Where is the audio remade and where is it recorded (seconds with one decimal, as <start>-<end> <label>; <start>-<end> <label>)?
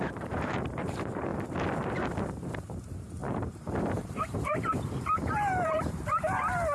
0.0-1.3 remade; 1.3-2.1 recorded; 2.1-6.7 remade